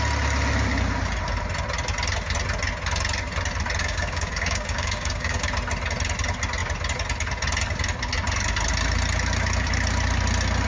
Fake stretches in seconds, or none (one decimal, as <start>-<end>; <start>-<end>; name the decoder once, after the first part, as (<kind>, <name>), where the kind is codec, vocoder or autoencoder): 3.8-5.5 (codec, DAC)